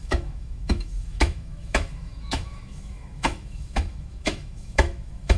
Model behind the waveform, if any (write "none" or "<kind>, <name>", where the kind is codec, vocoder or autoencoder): autoencoder, DAC-VAE